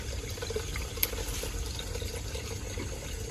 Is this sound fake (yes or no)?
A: no